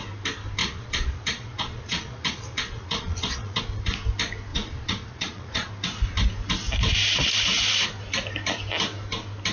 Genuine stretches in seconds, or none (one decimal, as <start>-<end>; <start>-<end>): 0.0-0.6; 3.6-4.5; 5.7-9.5